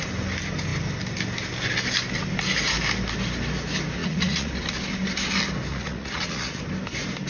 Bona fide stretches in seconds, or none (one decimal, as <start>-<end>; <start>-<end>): 0.0-4.0; 4.5-5.7; 6.6-7.3